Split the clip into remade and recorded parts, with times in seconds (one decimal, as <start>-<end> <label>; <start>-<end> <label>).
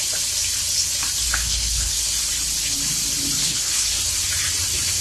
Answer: 0.0-1.4 recorded; 1.4-2.0 remade; 2.0-3.4 recorded; 3.4-3.9 remade; 3.9-5.0 recorded